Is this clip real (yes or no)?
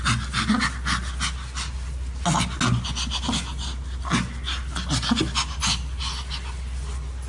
yes